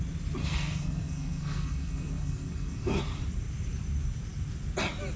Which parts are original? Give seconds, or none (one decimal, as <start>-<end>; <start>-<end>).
0.0-0.4; 3.0-5.2